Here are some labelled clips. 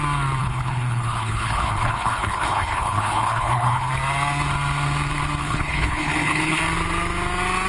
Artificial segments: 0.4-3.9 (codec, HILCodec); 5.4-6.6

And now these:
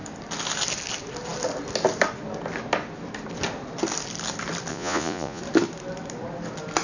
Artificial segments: 4.7-5.4 (vocoder, Vocos)

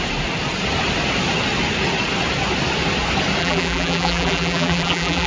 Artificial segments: 3.4-5.3 (vocoder, BigVGAN v2)